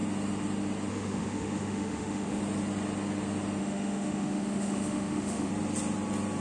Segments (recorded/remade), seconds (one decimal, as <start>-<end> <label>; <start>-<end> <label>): 0.0-0.9 recorded; 0.9-2.4 remade; 2.4-3.6 recorded; 3.6-5.5 remade; 5.5-6.4 recorded